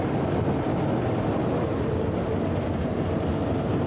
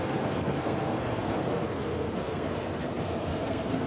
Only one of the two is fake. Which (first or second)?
second